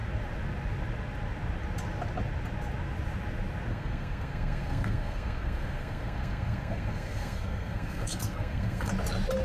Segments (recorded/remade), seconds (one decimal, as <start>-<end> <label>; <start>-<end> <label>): 0.0-3.7 recorded; 3.7-8.9 remade; 8.9-9.4 recorded